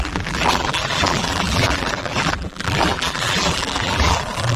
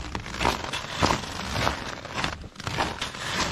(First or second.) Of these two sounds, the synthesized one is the first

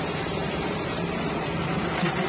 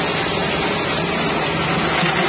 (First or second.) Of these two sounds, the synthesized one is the first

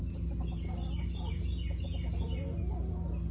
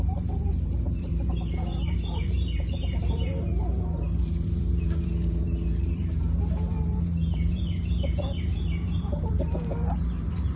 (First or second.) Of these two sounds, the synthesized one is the second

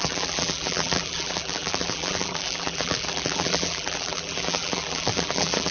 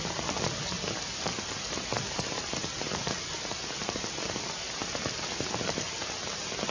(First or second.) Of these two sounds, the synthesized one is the first